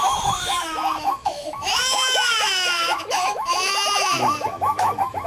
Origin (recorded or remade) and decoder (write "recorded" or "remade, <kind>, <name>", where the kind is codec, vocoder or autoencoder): remade, autoencoder, DAC-VAE